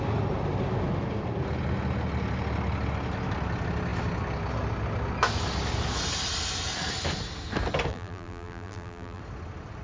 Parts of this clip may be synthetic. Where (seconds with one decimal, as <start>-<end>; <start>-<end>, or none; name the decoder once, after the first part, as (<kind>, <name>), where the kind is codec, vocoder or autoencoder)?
7.9-9.2 (vocoder, BigVGAN v2)